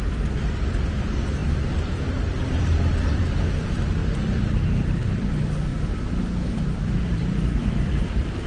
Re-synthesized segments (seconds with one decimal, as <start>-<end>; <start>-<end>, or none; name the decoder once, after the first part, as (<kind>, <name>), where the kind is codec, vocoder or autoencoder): 0.0-8.5 (vocoder, BigVGAN v2)